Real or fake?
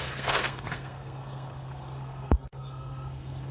fake